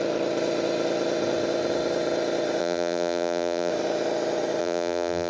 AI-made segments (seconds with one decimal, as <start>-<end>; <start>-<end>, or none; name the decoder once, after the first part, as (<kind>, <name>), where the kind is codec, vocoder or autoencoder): 2.6-3.7 (vocoder, BigVGAN v2); 4.6-5.3